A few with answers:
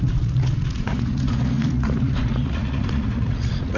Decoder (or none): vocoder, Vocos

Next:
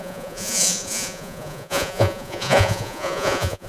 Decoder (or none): vocoder, Vocos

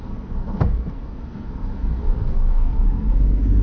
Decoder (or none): codec, SNAC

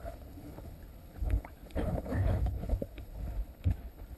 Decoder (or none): codec, HILCodec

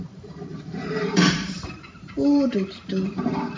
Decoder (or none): vocoder, BigVGAN v2